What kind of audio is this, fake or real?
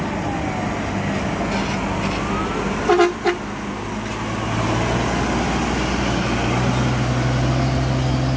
real